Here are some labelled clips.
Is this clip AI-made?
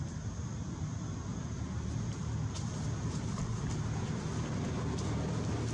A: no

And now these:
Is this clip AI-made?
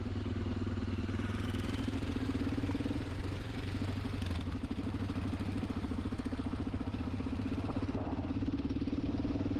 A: no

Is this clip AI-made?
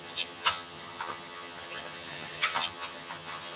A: yes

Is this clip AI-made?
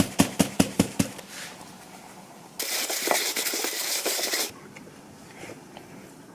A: yes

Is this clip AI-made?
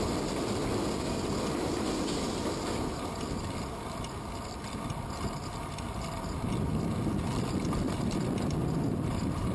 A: no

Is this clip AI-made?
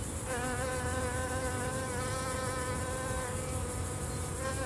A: no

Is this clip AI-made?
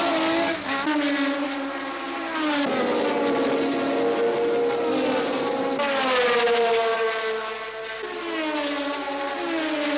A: no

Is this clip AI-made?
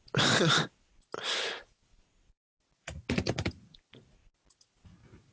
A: no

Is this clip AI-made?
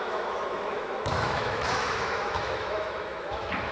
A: yes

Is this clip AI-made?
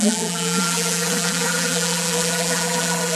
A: yes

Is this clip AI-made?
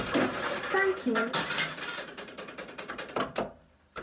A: no